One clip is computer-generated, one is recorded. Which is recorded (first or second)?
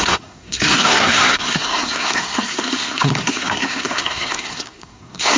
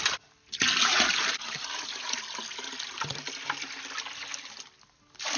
second